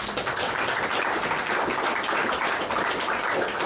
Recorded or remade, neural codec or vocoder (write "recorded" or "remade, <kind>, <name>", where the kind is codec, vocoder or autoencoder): recorded